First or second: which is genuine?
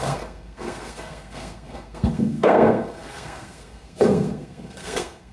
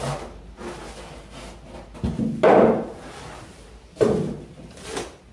second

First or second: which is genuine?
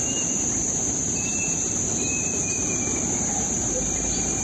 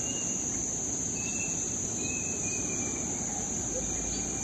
second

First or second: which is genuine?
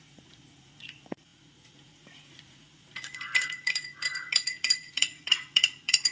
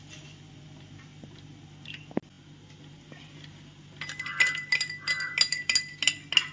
second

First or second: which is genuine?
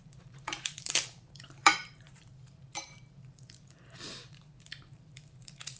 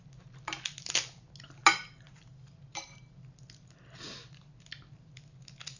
second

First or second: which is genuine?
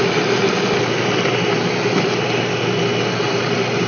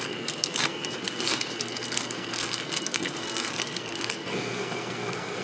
first